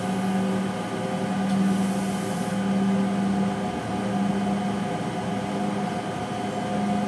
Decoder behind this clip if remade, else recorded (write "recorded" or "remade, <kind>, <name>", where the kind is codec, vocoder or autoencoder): recorded